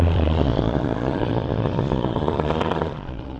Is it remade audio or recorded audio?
remade